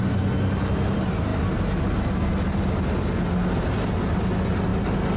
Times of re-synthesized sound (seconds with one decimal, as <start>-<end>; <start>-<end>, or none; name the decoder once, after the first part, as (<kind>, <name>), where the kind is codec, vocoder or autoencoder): none